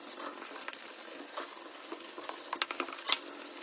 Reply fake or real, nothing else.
real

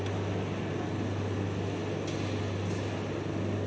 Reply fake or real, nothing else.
real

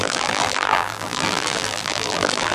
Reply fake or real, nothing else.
fake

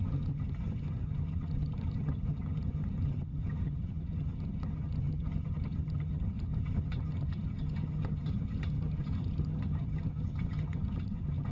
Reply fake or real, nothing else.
fake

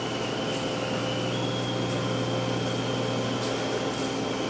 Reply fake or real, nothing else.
real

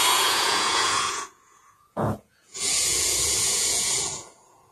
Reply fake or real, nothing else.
fake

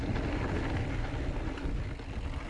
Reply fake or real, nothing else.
real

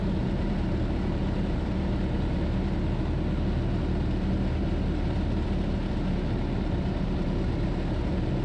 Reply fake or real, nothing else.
real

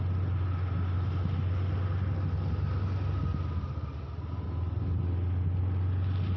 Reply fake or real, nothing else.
real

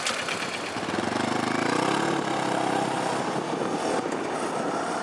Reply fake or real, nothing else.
real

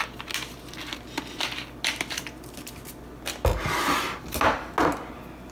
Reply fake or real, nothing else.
real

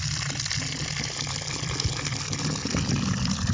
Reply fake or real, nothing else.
real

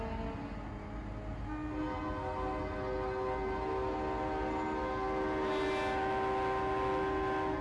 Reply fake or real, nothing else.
real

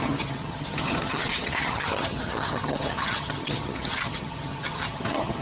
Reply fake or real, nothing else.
fake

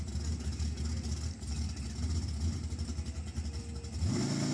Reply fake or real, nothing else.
real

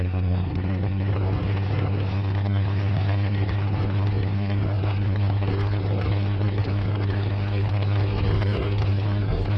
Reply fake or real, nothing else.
fake